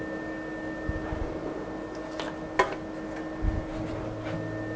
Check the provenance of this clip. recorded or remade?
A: recorded